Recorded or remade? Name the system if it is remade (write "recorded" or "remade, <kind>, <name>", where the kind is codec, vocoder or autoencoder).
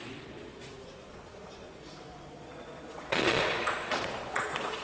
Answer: remade, vocoder, Vocos